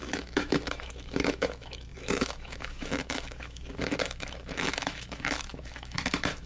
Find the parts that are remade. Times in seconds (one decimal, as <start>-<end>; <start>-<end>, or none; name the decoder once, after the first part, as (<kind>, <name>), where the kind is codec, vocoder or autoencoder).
0.0-6.5 (autoencoder, DAC-VAE)